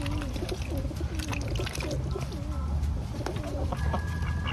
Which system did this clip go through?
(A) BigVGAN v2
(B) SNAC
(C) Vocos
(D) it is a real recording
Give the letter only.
D